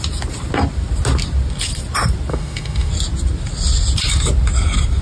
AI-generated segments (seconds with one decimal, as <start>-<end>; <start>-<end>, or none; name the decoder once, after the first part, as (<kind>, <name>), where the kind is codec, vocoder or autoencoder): 2.3-2.9 (autoencoder, DAC-VAE)